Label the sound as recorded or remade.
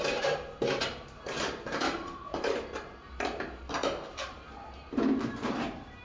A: remade